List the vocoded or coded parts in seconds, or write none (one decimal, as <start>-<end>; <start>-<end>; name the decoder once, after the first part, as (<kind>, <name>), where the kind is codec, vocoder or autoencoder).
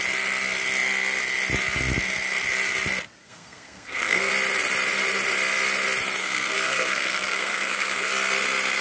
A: 3.2-4.3 (codec, SNAC); 6.2-8.1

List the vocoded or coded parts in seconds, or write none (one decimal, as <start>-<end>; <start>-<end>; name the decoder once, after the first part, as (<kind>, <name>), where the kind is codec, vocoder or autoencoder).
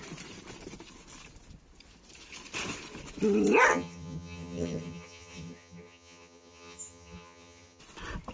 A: 3.7-7.8 (vocoder, HiFi-GAN)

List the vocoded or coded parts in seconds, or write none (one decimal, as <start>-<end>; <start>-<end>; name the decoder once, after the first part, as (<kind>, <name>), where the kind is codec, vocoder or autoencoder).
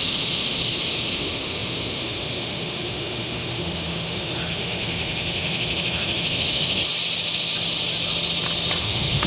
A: 0.0-6.8 (autoencoder, DAC-VAE); 8.8-9.3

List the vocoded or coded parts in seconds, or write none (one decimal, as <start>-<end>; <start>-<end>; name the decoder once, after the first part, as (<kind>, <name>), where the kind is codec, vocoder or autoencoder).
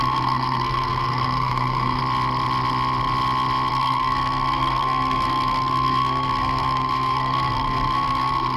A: 0.0-2.0 (codec, SNAC); 3.7-8.6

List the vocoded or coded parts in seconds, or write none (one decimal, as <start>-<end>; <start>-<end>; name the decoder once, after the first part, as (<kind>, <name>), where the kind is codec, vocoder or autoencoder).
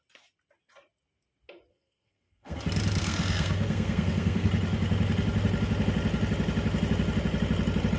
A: 1.7-2.6 (codec, SNAC); 3.0-4.5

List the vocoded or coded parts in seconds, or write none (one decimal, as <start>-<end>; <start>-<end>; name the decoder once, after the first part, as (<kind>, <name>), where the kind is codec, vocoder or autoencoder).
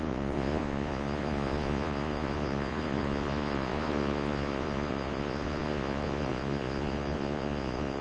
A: 0.0-8.0 (vocoder, Vocos)